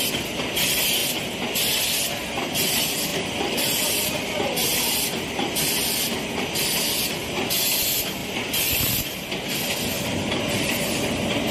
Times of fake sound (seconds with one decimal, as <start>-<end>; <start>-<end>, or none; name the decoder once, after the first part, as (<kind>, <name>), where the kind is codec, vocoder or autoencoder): none